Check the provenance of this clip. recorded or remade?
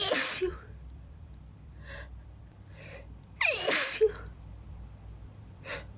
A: remade